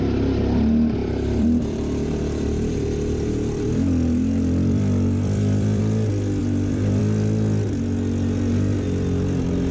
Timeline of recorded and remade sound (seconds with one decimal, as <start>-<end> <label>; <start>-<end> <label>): 0.0-1.0 recorded; 1.0-5.8 remade; 5.8-6.4 recorded; 6.4-7.0 remade; 7.0-9.7 recorded